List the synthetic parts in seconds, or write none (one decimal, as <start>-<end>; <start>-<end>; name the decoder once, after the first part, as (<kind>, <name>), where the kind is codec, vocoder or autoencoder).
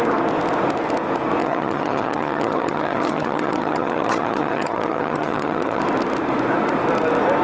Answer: 1.4-5.8 (vocoder, HiFi-GAN)